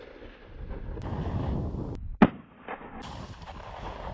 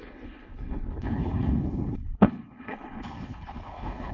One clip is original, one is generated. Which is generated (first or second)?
second